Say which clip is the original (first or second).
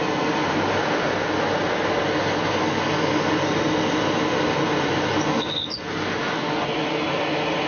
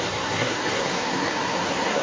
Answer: first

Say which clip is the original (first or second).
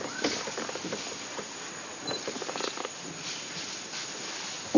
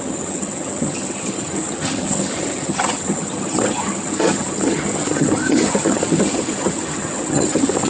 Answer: first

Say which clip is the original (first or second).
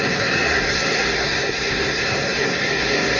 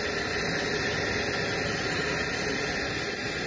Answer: second